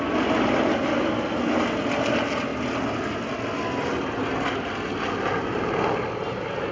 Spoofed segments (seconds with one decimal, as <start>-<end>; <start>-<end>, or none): none